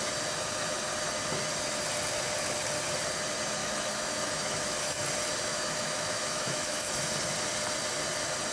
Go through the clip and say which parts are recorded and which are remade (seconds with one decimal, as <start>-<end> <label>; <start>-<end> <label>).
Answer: 0.0-3.6 recorded; 3.6-5.0 remade; 5.0-5.5 recorded; 5.5-7.1 remade; 7.1-8.5 recorded